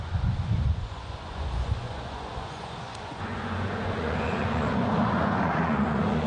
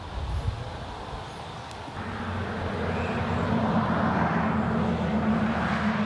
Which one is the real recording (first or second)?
second